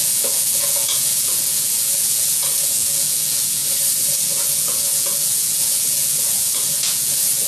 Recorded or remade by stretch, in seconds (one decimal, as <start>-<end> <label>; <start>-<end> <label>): 0.0-3.6 remade; 3.6-4.1 recorded; 4.1-7.5 remade